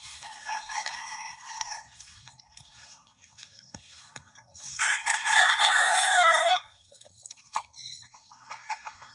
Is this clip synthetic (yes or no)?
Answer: yes